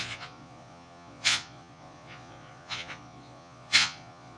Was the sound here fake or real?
fake